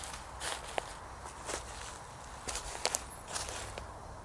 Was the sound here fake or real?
real